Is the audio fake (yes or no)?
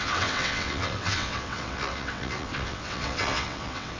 yes